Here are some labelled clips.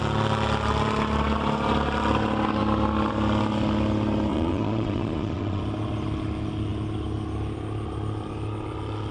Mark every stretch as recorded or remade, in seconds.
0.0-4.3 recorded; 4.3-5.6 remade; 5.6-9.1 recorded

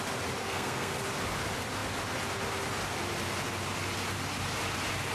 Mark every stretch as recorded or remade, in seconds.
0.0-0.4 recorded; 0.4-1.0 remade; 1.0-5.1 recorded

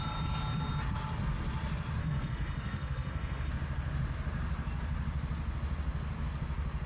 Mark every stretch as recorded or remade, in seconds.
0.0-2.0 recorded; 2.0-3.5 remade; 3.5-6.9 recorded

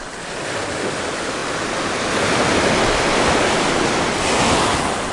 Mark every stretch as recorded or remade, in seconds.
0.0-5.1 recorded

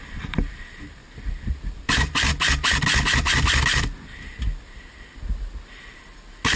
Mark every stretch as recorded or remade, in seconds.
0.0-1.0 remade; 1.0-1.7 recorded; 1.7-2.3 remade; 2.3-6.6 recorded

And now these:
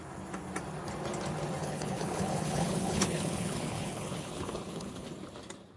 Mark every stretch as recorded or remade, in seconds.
0.0-1.6 recorded; 1.6-5.1 remade; 5.1-5.8 recorded